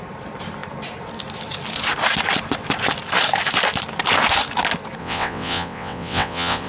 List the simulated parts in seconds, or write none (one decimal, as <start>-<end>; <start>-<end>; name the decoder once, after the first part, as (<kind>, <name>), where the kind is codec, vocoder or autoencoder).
5.0-6.7 (vocoder, WaveNeXt)